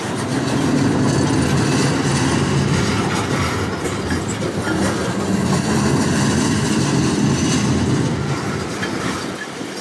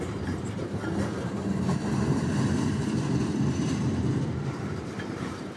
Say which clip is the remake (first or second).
second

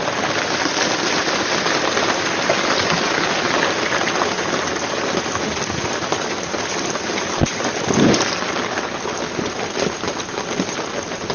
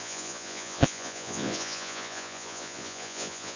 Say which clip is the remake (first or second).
second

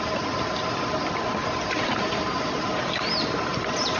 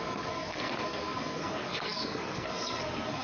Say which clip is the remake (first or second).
second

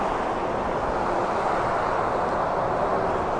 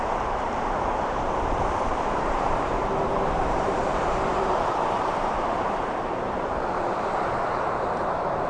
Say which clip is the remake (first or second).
second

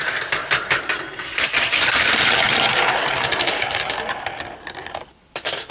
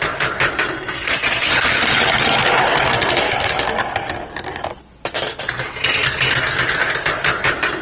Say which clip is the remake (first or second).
first